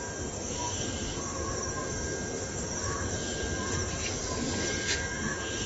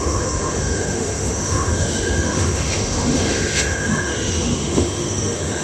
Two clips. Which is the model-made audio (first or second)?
second